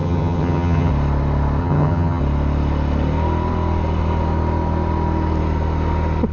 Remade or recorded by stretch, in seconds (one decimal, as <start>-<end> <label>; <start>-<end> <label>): 0.0-0.9 remade; 0.9-1.6 recorded; 1.6-2.2 remade; 2.2-6.3 recorded

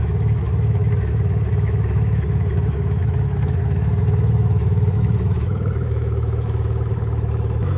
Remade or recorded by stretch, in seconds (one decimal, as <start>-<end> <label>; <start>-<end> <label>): 0.0-7.8 remade

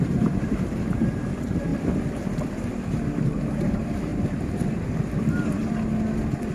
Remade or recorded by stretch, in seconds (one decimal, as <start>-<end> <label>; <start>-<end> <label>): 0.0-1.7 remade; 1.7-3.6 recorded; 3.6-5.6 remade; 5.6-6.5 recorded

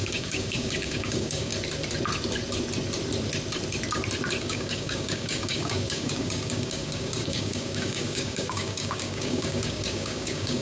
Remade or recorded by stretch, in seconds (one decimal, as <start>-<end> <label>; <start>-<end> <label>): 0.0-1.5 remade; 1.5-4.4 recorded; 4.4-10.6 remade

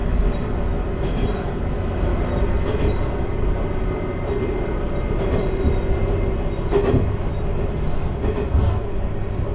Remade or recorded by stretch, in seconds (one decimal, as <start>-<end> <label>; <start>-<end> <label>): 0.0-9.5 recorded

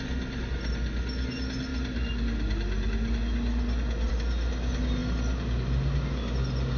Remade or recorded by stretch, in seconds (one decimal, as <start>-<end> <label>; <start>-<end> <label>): 0.0-6.8 recorded

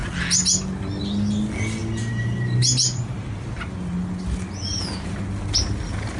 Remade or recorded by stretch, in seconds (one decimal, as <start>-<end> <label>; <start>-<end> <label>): 0.0-6.2 recorded